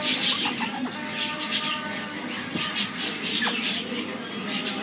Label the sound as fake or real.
real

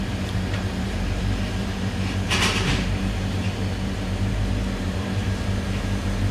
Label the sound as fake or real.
fake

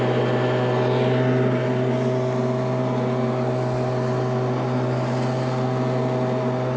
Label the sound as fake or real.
real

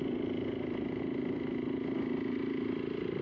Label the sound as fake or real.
real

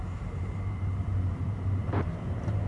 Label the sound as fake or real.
fake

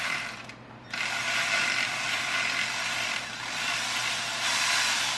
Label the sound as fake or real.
fake